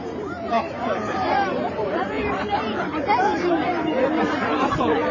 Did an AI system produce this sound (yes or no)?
yes